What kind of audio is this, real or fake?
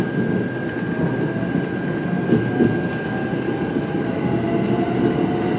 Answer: real